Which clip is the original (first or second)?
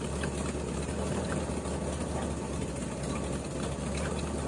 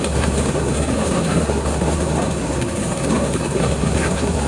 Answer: first